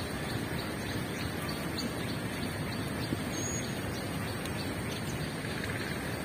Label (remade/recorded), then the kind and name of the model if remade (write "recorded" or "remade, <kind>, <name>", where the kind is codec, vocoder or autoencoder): recorded